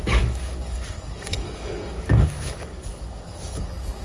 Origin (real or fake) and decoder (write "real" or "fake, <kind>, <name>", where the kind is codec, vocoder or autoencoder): fake, codec, DAC